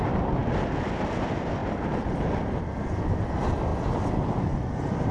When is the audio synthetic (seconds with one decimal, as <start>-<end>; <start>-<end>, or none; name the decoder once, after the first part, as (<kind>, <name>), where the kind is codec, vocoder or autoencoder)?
none